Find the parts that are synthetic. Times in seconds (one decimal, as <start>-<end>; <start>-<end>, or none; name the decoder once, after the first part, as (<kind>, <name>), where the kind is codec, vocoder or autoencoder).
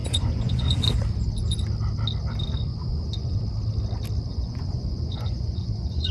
0.0-0.8 (vocoder, Vocos); 2.7-3.4; 4.3-6.1